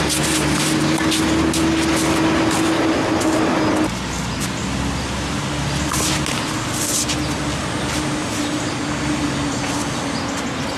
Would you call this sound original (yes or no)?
yes